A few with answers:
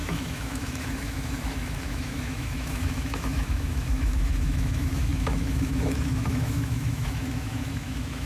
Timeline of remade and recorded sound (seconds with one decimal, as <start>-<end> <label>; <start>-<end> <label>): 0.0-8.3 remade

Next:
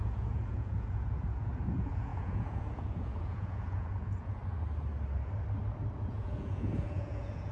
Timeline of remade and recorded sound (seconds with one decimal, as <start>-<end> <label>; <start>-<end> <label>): 0.0-4.4 remade; 4.4-6.1 recorded; 6.1-7.5 remade

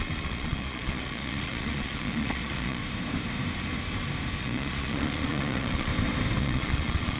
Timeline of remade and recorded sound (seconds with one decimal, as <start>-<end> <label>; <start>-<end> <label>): 0.0-2.8 remade; 2.8-4.4 recorded; 4.4-5.9 remade; 5.9-6.4 recorded; 6.4-7.2 remade